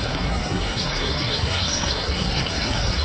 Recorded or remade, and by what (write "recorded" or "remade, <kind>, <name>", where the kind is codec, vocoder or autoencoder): remade, codec, SNAC